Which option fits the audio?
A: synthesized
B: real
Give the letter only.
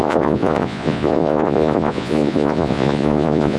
A